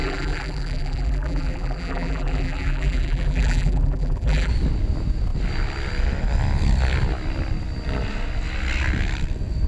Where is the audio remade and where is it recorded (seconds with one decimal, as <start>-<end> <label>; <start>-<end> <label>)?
0.0-4.5 remade; 4.5-9.7 recorded